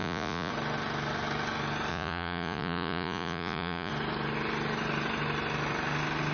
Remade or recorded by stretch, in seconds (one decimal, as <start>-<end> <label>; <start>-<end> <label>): 0.0-0.5 remade; 0.5-1.9 recorded; 1.9-3.9 remade; 3.9-6.3 recorded